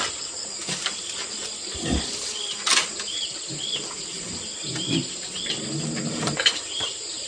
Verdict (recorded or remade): remade